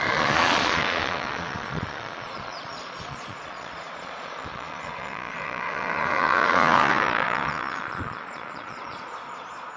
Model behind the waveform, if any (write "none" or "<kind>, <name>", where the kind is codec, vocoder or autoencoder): vocoder, Vocos